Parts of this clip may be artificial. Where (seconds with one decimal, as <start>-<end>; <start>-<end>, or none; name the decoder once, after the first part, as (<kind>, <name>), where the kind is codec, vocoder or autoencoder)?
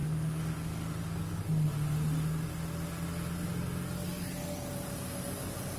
0.0-1.4 (codec, DAC)